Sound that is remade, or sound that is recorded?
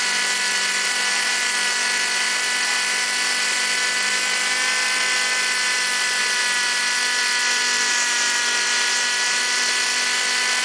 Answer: recorded